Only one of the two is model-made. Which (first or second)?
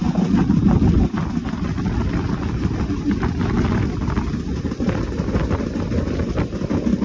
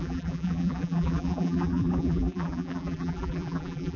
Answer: second